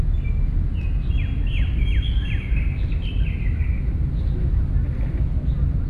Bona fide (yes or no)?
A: yes